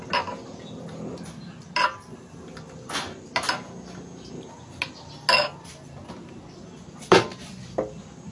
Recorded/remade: recorded